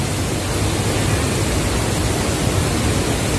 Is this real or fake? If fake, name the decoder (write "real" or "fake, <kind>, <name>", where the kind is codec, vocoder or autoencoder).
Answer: real